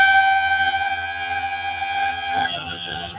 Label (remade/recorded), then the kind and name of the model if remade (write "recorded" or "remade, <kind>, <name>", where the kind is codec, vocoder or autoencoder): remade, vocoder, HiFi-GAN